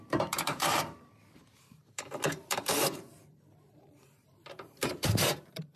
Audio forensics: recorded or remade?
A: remade